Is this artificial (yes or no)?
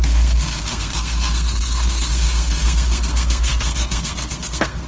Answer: yes